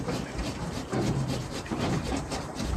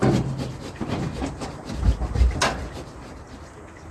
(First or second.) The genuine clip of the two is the second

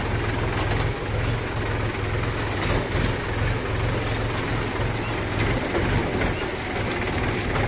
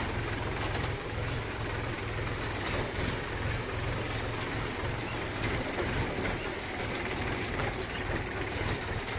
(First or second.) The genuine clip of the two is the first